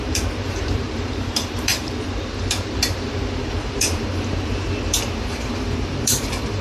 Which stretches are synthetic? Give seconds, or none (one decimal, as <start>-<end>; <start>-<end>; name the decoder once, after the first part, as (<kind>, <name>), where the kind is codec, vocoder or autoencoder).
0.0-6.6 (vocoder, BigVGAN v2)

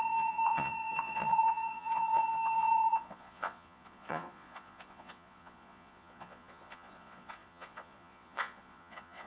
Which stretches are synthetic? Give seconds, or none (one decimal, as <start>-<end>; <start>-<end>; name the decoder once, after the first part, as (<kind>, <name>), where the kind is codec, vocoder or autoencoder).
0.0-9.3 (vocoder, Vocos)

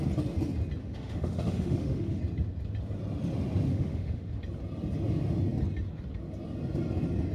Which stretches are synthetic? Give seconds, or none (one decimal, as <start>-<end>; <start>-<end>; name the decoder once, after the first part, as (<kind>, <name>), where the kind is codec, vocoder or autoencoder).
0.8-2.2 (autoencoder, DAC-VAE); 3.7-4.3